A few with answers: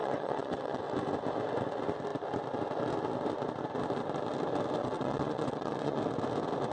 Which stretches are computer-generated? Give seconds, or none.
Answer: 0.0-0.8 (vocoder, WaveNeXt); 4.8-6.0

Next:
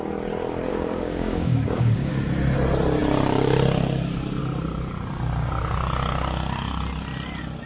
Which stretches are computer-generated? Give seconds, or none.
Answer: 0.7-2.1 (codec, DAC)

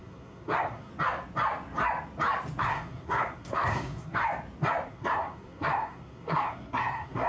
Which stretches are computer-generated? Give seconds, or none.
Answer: 0.0-0.9 (codec, SNAC); 2.6-4.2; 4.9-7.3

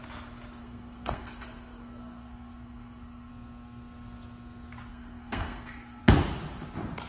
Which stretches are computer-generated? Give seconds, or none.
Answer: 0.6-3.3 (codec, SNAC); 4.9-6.0